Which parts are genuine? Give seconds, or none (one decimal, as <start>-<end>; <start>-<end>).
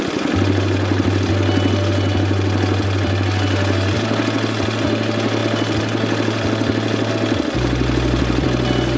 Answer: 0.0-5.4; 7.1-9.0